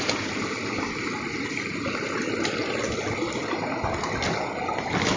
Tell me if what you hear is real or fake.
real